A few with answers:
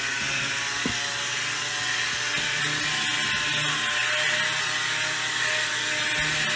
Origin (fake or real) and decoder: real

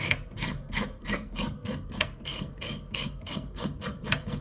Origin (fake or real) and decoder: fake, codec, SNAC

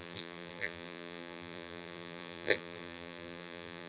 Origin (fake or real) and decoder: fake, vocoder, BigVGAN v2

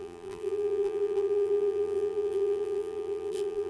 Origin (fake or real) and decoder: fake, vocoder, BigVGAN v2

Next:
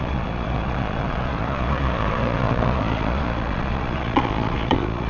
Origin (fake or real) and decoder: fake, vocoder, Vocos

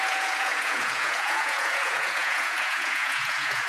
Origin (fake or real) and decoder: fake, vocoder, Vocos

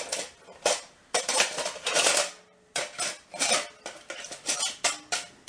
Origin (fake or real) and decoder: real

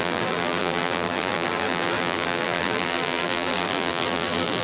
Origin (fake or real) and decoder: fake, vocoder, BigVGAN v2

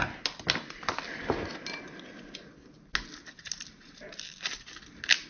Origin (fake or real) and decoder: real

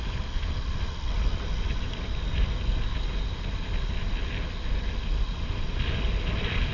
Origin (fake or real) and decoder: real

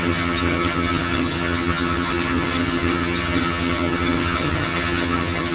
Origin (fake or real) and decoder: fake, vocoder, HiFi-GAN